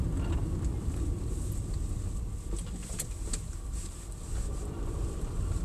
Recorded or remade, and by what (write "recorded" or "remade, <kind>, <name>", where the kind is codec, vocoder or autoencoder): recorded